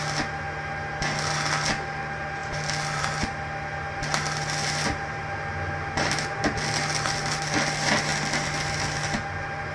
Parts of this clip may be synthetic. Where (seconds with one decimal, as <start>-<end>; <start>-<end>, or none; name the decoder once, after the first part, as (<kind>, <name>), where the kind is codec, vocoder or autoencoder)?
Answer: none